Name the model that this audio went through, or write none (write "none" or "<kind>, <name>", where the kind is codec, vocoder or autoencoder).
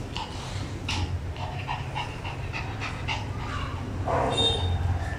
none